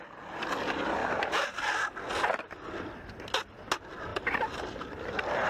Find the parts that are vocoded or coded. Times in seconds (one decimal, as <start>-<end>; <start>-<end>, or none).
1.0-2.5; 4.1-5.5